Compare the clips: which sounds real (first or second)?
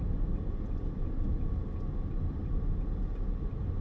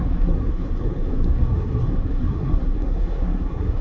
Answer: first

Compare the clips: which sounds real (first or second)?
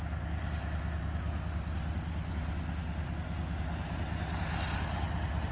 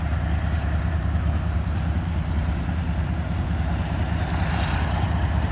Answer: first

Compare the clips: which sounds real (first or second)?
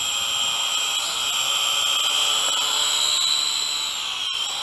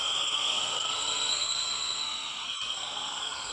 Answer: first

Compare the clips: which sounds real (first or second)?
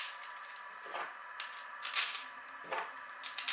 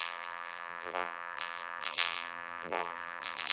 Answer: first